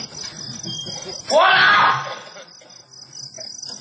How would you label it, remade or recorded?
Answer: recorded